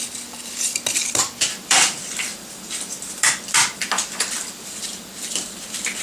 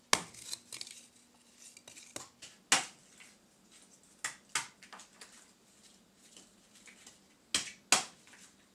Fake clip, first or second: first